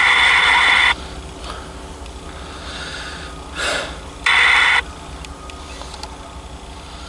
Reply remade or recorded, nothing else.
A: recorded